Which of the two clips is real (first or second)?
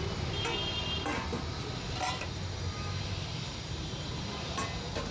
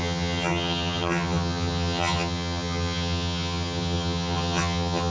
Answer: first